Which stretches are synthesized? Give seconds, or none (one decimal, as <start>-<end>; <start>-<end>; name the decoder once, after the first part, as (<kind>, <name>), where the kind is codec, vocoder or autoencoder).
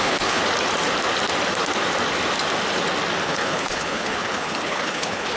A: 0.0-0.4 (codec, HILCodec); 3.2-5.4